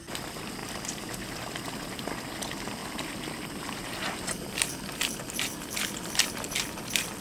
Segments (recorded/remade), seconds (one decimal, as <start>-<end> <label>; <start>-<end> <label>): 0.0-7.2 recorded